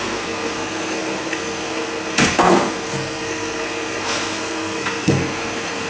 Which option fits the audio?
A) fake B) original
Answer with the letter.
A